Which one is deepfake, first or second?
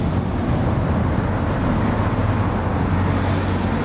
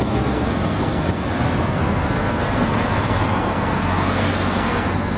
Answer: second